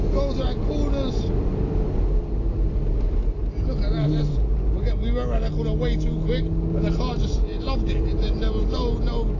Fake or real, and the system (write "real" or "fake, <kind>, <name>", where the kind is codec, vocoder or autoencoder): real